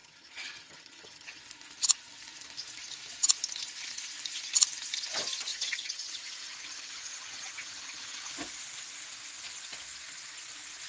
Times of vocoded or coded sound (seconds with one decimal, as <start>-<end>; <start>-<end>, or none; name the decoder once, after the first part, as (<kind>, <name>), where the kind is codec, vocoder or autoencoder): 0.0-1.4 (vocoder, HiFi-GAN); 5.5-8.3